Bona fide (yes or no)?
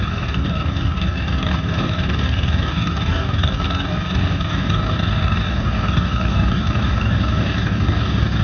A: no